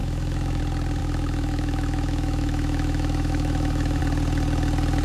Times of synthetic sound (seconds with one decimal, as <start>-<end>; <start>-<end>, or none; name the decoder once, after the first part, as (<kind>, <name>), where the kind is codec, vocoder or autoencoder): 0.0-0.6 (autoencoder, DAC-VAE); 1.0-4.0